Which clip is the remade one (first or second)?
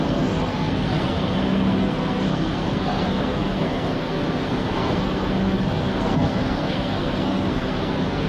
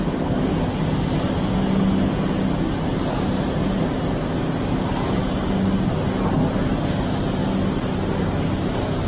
first